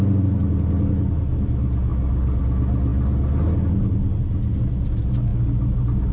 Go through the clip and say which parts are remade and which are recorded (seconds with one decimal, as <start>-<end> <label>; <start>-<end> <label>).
0.0-1.9 recorded; 1.9-2.4 remade; 2.4-6.1 recorded